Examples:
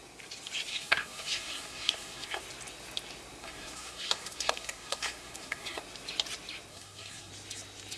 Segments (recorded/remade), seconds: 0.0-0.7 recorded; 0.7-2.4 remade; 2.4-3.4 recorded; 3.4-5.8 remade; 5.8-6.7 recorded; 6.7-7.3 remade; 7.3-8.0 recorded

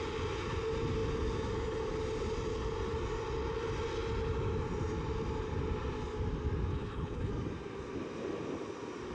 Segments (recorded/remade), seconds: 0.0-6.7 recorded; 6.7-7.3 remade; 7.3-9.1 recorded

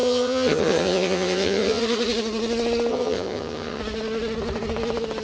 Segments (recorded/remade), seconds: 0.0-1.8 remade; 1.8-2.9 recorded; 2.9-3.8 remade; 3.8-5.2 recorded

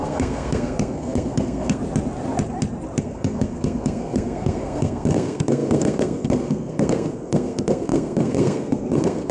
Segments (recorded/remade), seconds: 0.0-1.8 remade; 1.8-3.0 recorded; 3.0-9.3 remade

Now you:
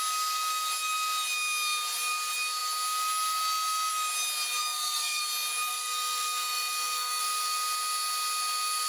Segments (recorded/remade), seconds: 0.0-4.6 recorded; 4.6-5.2 remade; 5.2-5.7 recorded; 5.7-7.2 remade; 7.2-8.9 recorded

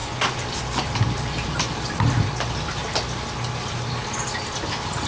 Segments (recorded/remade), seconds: 0.0-0.8 recorded; 0.8-2.8 remade; 2.8-3.6 recorded; 3.6-4.0 remade; 4.0-4.6 recorded; 4.6-5.1 remade

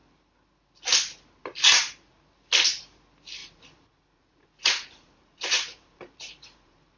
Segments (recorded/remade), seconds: 0.0-3.4 recorded; 3.4-7.0 remade